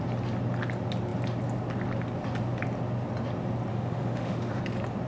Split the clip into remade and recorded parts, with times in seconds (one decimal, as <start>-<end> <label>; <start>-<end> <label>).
0.0-3.7 recorded; 3.7-4.6 remade; 4.6-5.1 recorded